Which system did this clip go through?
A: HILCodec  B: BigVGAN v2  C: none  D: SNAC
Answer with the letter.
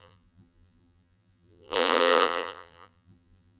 B